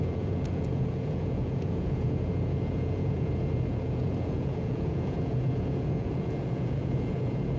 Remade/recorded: remade